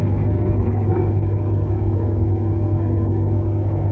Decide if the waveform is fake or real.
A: fake